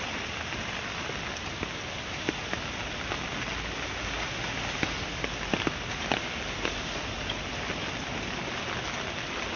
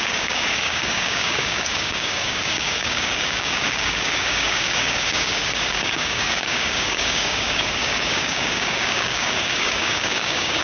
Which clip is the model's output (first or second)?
second